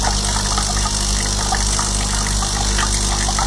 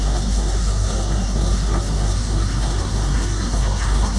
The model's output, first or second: second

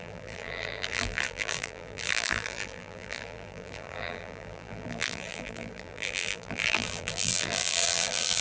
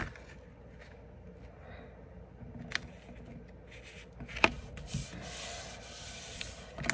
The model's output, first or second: first